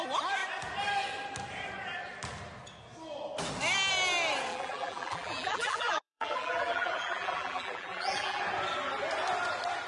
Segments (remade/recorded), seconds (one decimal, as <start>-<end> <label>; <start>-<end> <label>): 0.0-4.5 recorded; 4.5-8.4 remade; 8.4-9.9 recorded